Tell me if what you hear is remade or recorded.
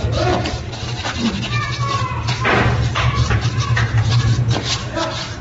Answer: remade